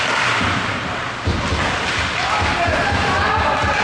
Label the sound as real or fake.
fake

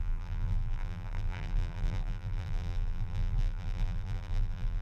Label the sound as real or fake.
fake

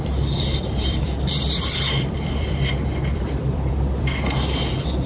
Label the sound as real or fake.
fake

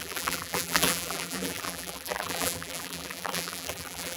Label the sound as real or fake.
fake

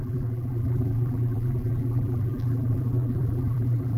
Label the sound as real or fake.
fake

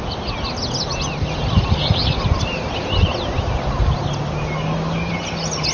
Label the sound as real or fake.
real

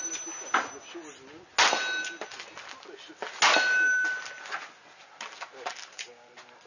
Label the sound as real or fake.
real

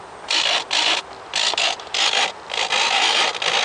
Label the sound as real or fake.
real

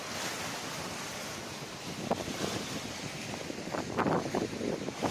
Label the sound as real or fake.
fake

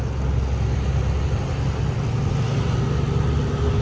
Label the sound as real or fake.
real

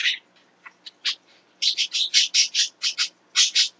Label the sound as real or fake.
real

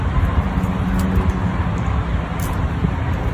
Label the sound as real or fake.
real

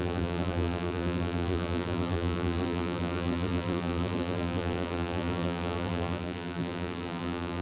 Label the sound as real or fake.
fake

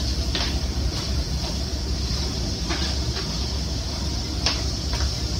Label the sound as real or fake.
real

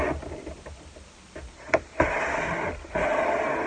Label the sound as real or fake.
real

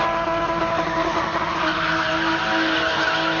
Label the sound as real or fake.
real